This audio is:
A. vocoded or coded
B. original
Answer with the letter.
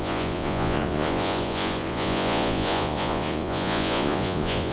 A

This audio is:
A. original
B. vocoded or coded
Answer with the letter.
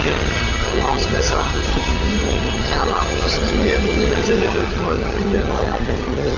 B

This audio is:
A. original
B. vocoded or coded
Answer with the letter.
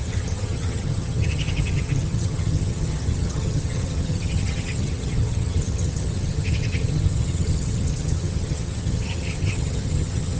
B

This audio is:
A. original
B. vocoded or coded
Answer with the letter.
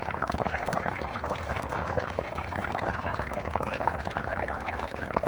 B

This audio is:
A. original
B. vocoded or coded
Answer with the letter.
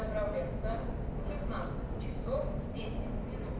A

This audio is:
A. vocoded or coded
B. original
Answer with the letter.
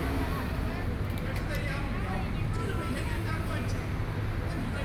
B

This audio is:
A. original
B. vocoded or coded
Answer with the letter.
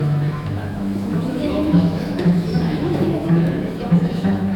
B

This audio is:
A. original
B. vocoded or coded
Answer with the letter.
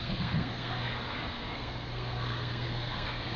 B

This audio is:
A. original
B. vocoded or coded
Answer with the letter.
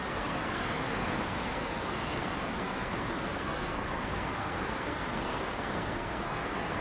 B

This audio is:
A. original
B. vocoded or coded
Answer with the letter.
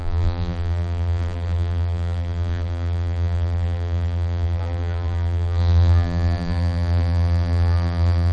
B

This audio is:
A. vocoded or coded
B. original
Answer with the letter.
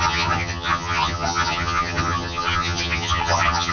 A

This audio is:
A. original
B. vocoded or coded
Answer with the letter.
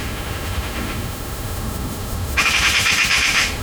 B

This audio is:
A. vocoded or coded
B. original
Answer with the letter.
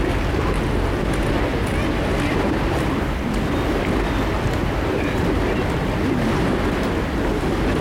B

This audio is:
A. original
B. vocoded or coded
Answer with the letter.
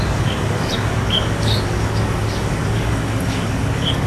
B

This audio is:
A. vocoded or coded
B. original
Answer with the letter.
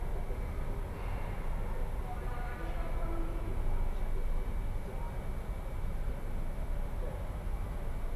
B